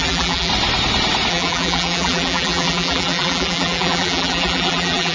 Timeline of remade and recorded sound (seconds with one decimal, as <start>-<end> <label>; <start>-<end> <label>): 0.0-0.5 remade; 0.5-1.3 recorded; 1.3-5.1 remade